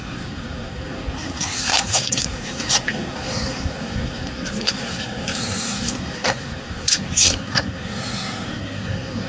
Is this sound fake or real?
fake